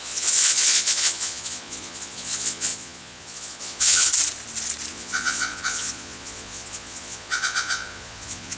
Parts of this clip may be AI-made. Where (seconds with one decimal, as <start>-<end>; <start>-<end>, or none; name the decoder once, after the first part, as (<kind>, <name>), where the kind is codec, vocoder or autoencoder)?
0.0-4.1 (vocoder, Vocos); 4.9-8.6